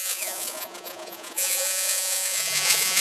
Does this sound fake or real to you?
fake